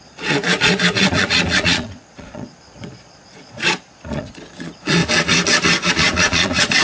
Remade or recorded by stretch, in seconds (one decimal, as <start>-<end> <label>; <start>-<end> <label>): 0.0-5.0 remade; 5.0-5.9 recorded; 5.9-6.8 remade